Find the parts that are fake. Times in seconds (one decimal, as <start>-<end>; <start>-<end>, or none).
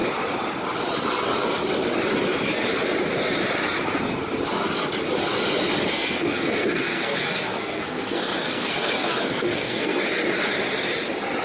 5.9-10.0